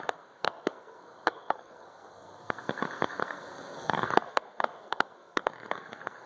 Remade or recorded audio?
remade